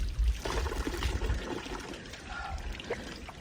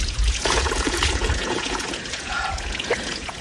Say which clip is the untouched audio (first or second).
first